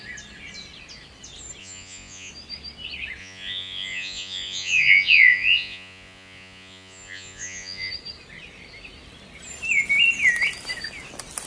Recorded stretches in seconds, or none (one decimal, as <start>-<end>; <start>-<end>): 0.0-1.6; 2.3-3.2; 7.9-11.5